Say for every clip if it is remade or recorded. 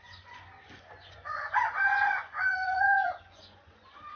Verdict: remade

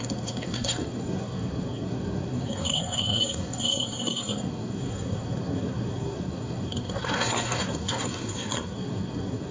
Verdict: remade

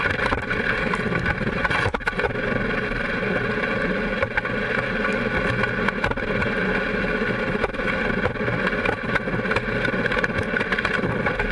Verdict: recorded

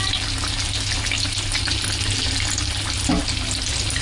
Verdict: recorded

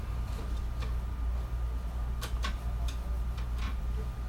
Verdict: recorded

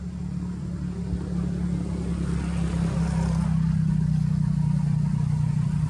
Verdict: recorded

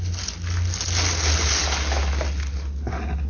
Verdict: recorded